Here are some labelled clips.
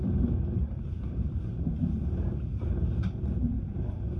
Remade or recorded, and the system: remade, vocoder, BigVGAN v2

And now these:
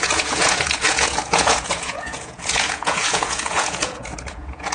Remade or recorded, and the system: remade, vocoder, Vocos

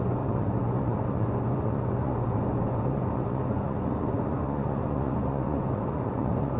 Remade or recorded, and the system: remade, vocoder, Vocos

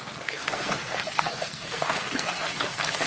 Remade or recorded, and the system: remade, codec, SNAC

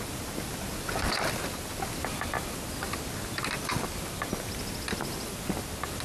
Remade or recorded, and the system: recorded